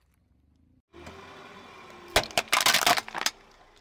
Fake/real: real